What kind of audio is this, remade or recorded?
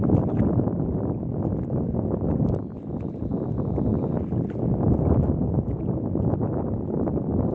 recorded